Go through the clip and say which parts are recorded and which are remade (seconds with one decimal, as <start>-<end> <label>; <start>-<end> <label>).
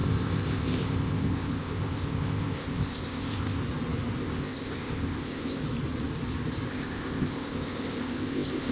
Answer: 0.0-3.6 remade; 3.6-4.2 recorded; 4.2-5.6 remade; 5.6-6.7 recorded; 6.7-8.7 remade